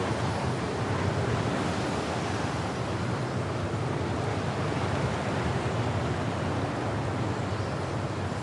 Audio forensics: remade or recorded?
recorded